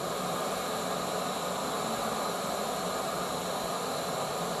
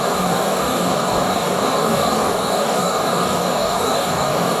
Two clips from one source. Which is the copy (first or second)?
second